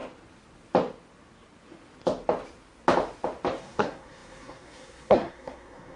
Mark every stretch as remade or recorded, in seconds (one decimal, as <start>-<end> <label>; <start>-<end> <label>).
0.0-3.6 recorded; 3.6-6.0 remade